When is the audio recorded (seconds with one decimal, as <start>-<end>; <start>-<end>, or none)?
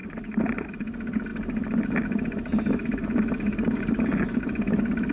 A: 0.0-5.1